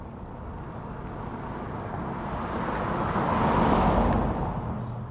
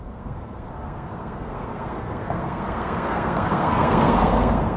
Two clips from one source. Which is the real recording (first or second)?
first